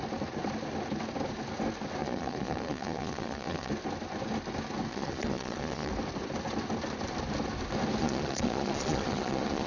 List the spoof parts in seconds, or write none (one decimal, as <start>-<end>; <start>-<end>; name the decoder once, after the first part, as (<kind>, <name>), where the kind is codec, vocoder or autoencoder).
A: 2.0-3.7 (vocoder, Vocos); 4.9-5.9; 8.0-9.7